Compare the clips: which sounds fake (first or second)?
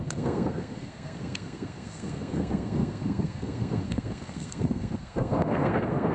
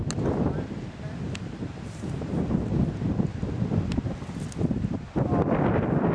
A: first